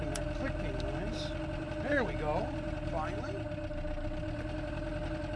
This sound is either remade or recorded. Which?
recorded